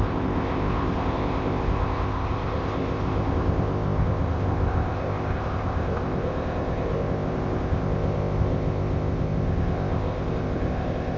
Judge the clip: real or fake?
fake